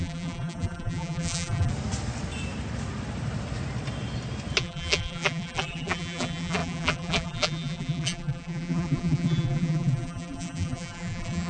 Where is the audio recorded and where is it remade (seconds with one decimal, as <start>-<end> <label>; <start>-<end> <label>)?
0.0-1.7 remade; 1.7-4.6 recorded; 4.6-11.5 remade